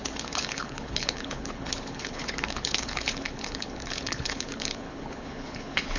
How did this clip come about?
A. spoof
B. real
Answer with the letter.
A